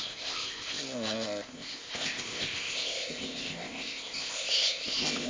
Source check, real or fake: fake